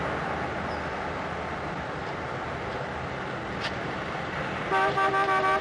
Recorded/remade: recorded